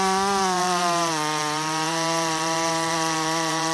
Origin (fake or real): fake